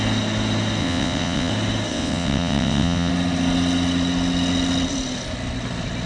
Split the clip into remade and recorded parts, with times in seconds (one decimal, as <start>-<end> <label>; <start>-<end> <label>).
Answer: 0.0-0.8 recorded; 0.8-1.5 remade; 1.5-1.9 recorded; 1.9-3.1 remade; 3.1-6.1 recorded